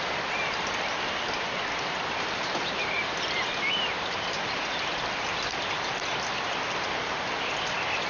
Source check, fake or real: real